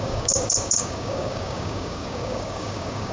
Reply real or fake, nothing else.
fake